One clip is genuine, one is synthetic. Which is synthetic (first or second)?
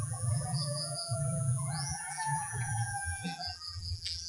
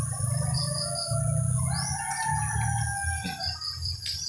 first